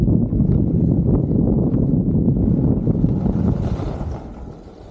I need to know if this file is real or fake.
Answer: real